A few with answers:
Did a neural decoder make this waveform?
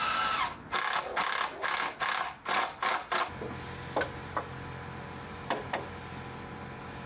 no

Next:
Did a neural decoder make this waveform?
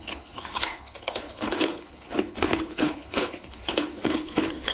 yes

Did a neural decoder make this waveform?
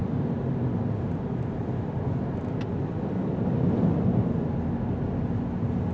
no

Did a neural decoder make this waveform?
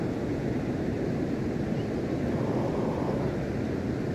no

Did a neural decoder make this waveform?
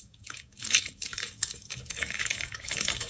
yes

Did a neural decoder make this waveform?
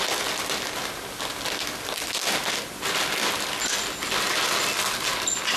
no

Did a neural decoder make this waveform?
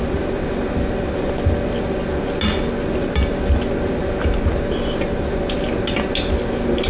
no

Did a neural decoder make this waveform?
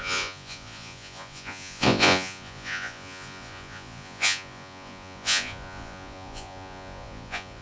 yes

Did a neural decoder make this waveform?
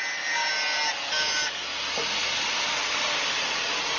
no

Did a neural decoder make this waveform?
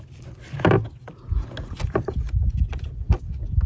no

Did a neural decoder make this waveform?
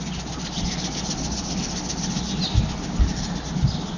no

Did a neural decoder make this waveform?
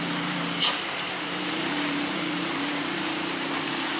yes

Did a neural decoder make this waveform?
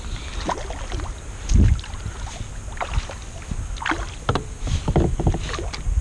no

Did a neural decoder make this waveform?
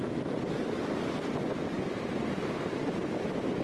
no